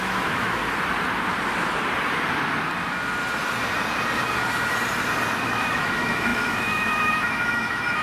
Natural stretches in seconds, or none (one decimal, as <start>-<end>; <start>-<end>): 0.6-5.4